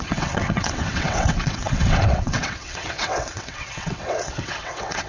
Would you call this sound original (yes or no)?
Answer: no